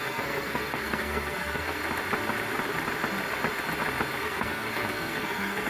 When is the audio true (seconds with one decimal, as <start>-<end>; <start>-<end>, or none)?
1.8-4.2